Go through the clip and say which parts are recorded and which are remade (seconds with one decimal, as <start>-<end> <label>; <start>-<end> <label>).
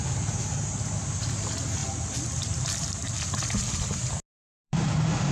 0.0-4.5 recorded; 4.5-5.3 remade